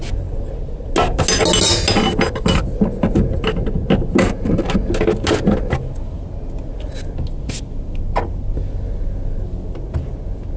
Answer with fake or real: real